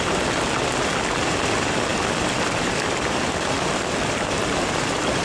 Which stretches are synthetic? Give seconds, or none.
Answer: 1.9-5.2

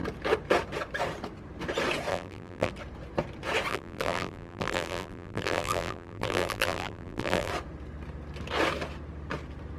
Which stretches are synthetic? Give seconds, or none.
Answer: 2.1-2.7; 3.7-7.5

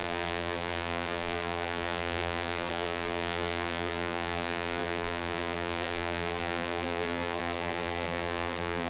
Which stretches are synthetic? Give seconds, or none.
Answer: 0.0-8.9

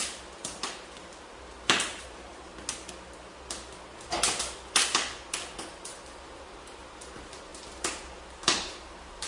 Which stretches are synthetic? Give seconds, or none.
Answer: 0.0-2.5; 5.7-7.5; 8.3-9.3

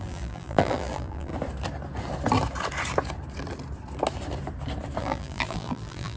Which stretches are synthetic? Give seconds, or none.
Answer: 0.0-1.3; 5.0-6.2

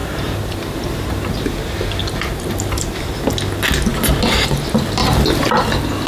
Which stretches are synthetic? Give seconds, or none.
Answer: 0.0-1.5; 2.0-3.0; 5.0-5.5